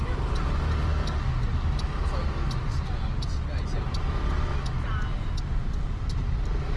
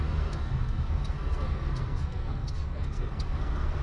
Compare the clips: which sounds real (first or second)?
first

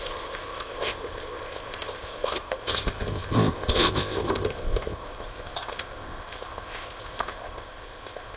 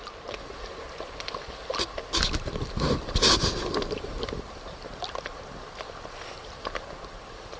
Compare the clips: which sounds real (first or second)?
second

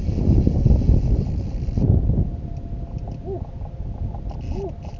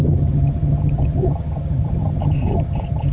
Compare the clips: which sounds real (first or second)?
first